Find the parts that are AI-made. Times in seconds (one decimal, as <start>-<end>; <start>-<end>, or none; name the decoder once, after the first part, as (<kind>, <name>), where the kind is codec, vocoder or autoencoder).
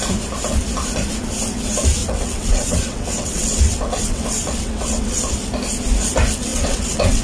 2.0-5.2 (vocoder, WaveNeXt); 6.5-7.2